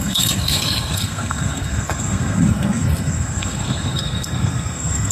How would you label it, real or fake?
fake